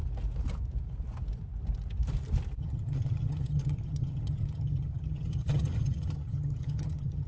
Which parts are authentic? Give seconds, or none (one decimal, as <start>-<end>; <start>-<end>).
0.0-2.6